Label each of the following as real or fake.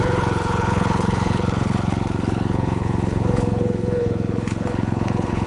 fake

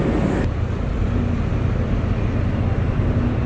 fake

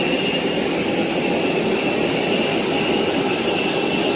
real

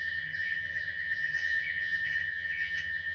fake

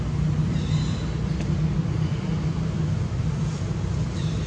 real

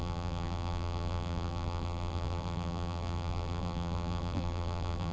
fake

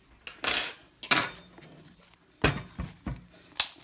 real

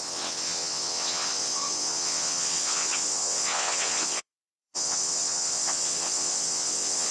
fake